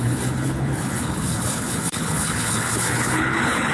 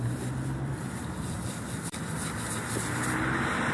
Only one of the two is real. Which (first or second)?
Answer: second